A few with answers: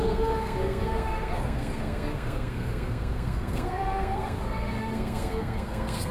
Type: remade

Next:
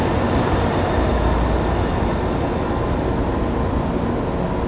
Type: recorded